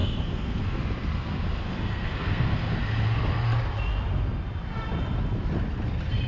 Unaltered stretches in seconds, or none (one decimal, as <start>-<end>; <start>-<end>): 0.8-1.6; 2.7-6.3